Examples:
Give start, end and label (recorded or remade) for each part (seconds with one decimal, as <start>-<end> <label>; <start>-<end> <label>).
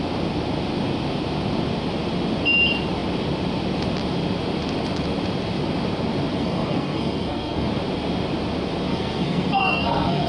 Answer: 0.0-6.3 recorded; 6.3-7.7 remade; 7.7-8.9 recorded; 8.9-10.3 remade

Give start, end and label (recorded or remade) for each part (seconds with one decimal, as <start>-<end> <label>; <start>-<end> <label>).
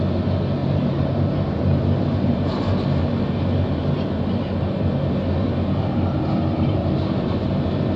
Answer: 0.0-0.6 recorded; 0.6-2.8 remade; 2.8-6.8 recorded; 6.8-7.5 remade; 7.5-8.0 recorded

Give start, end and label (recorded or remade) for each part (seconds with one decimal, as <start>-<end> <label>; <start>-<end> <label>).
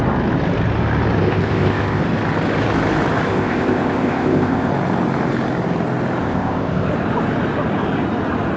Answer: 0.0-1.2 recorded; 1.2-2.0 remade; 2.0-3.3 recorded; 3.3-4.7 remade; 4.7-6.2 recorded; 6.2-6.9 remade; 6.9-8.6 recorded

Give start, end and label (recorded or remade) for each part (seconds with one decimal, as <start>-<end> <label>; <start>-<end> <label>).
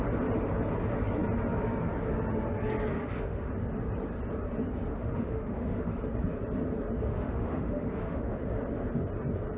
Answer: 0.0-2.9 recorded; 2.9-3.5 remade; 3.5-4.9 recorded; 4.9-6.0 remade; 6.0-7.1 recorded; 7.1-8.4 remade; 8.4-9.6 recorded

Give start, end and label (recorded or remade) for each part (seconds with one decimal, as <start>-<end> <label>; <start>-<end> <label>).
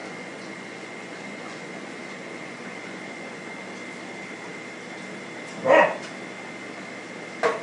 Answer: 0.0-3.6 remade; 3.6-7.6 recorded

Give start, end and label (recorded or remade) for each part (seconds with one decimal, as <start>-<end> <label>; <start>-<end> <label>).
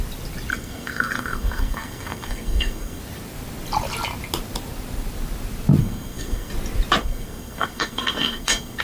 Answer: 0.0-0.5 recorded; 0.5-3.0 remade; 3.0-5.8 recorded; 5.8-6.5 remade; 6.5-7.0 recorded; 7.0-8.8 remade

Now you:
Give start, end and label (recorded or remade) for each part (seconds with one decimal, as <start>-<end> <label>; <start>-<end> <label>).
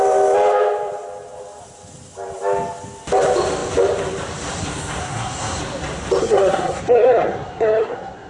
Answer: 0.0-5.0 recorded; 5.0-5.6 remade; 5.6-6.2 recorded; 6.2-8.3 remade